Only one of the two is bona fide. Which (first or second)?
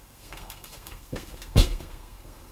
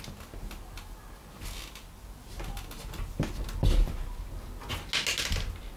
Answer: second